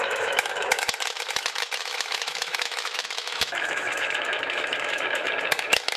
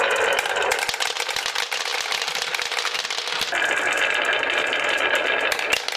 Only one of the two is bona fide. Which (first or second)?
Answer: second